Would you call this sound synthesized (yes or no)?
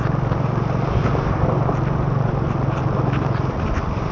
no